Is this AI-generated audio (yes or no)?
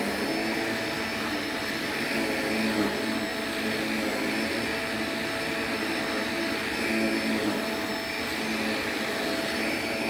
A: no